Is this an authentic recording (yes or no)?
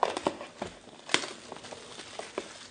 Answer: yes